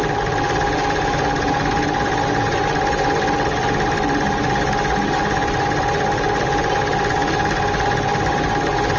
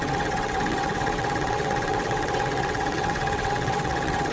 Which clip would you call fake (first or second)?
second